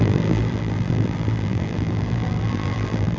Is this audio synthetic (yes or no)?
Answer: yes